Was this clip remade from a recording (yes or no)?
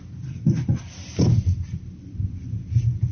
no